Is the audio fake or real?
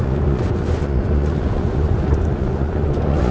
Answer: fake